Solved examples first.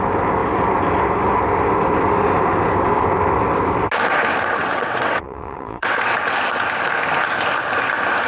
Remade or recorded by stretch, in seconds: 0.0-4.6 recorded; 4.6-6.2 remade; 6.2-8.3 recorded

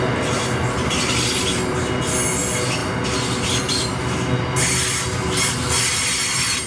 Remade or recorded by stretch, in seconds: 0.0-6.7 recorded

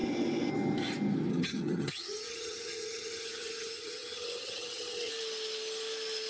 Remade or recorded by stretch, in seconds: 0.0-1.3 recorded; 1.3-5.1 remade; 5.1-6.3 recorded

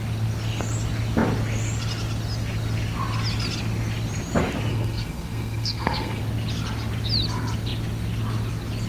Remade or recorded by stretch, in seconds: 0.0-4.7 recorded; 4.7-6.2 remade; 6.2-8.9 recorded

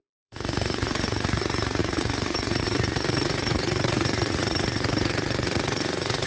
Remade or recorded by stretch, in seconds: 0.0-6.3 remade

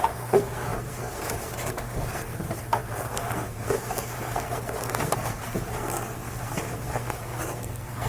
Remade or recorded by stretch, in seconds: 0.0-8.1 remade

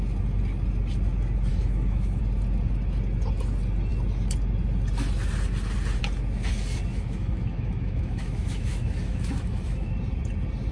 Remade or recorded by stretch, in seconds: 0.0-1.5 recorded; 1.5-2.2 remade; 2.2-6.9 recorded; 6.9-9.9 remade; 9.9-10.7 recorded

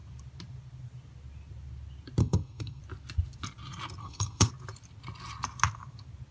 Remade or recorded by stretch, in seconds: 0.0-2.2 recorded; 2.2-2.8 remade; 2.8-4.0 recorded; 4.0-4.5 remade; 4.5-6.3 recorded